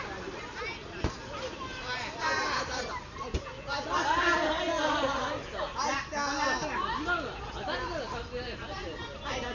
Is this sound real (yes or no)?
yes